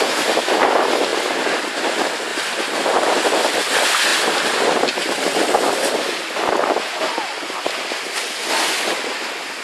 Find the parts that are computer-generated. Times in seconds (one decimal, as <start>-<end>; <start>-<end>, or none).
none